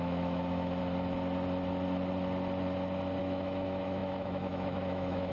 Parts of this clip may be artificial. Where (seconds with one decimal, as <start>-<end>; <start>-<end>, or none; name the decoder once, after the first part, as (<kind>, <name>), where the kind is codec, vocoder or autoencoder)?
0.0-0.8 (autoencoder, DAC-VAE); 3.2-5.3